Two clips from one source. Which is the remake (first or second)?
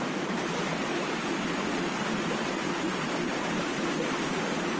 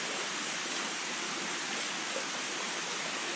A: first